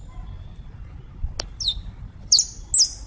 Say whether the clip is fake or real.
real